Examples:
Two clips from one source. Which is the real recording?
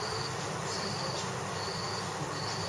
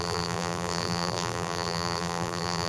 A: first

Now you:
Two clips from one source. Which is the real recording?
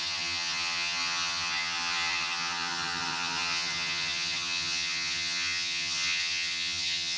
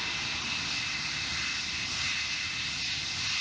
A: second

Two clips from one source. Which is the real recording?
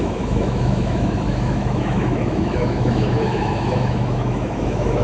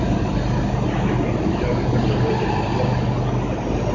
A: second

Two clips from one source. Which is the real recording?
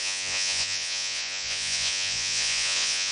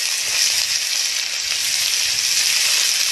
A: second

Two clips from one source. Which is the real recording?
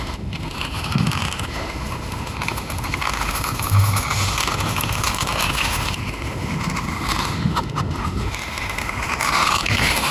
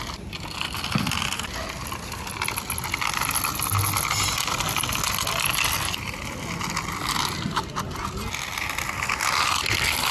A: second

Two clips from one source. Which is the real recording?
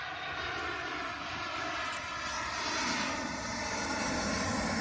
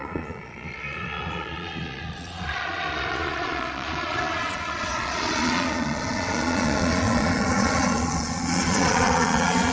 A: first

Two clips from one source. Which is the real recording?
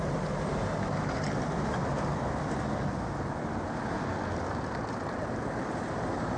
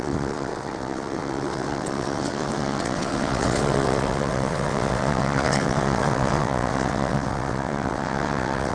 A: first